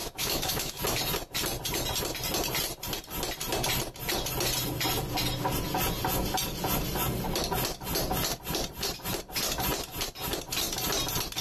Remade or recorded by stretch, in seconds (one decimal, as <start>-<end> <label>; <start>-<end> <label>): 0.0-0.8 remade; 0.8-11.4 recorded